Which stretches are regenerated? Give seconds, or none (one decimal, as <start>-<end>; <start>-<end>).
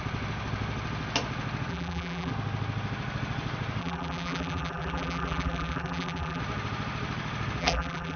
1.7-2.3; 3.8-6.4; 7.6-8.2